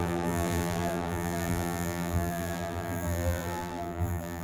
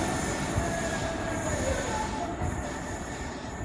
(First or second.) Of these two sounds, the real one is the second